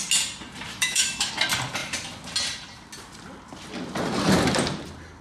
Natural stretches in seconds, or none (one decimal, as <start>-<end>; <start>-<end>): 0.0-0.7; 1.3-5.2